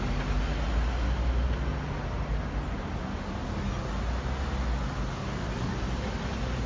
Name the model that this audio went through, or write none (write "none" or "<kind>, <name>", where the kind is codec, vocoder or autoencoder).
none